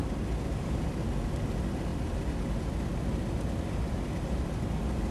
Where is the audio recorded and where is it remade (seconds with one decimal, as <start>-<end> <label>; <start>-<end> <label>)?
0.0-5.1 recorded